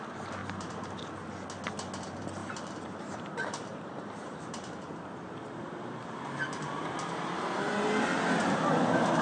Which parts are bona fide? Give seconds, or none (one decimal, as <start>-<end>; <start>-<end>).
0.0-0.4; 1.0-2.4; 7.7-9.2

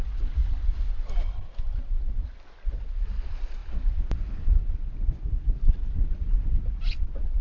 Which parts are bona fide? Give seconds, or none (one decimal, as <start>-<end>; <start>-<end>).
0.0-0.4; 2.7-7.4

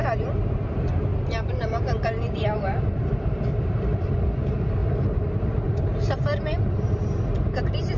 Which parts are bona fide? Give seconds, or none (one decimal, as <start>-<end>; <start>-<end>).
4.8-5.4

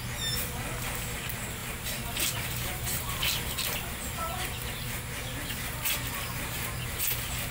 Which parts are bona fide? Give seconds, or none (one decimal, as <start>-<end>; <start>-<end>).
0.0-1.6; 5.0-7.5